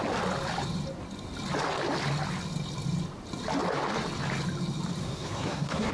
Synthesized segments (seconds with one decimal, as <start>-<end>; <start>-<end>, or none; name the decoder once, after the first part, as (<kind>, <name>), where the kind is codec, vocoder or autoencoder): 5.0-5.9 (codec, SNAC)